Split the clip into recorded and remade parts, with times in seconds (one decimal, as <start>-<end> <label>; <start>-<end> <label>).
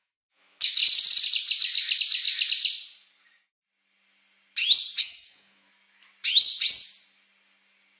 0.0-0.8 remade; 0.8-5.0 recorded; 5.0-5.7 remade; 5.7-8.0 recorded